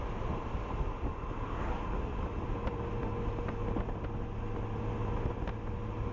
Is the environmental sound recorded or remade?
recorded